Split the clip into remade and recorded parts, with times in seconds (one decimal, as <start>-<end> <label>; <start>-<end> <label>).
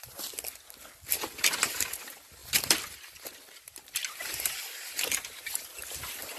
0.0-2.4 recorded; 2.4-3.1 remade; 3.1-6.4 recorded